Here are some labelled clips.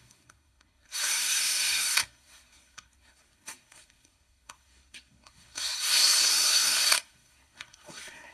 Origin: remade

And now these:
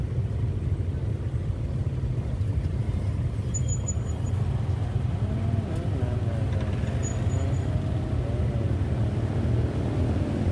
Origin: recorded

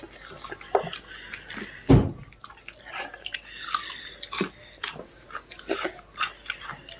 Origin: recorded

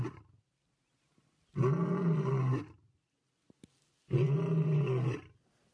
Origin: recorded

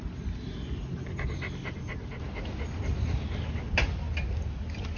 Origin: recorded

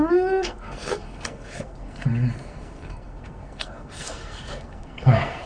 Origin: remade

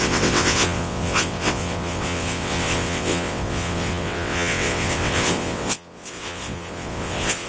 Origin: remade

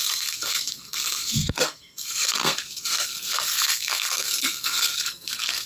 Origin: remade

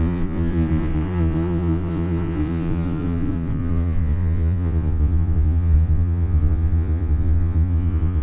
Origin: remade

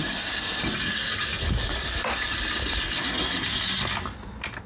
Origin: recorded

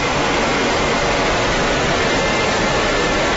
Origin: recorded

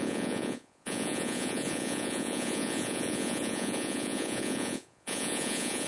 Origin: remade